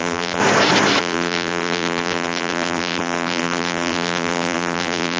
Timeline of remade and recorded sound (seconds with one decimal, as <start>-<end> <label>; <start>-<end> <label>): 0.0-0.4 remade; 0.4-1.0 recorded; 1.0-5.2 remade